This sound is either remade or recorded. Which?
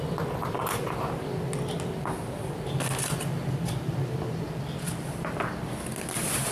recorded